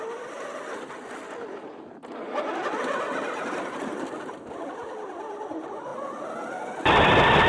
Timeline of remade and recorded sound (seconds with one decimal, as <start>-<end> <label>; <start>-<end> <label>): 0.0-7.5 recorded